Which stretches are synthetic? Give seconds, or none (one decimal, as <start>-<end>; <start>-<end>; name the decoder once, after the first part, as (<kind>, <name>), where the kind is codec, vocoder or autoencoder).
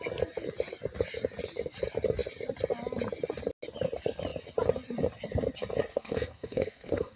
5.9-7.2 (codec, SNAC)